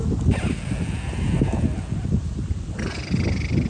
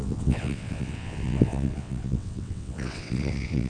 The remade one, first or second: second